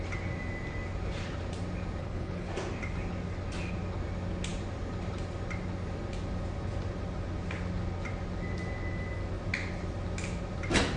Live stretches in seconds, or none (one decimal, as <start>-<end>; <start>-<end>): 0.0-2.0; 2.5-11.0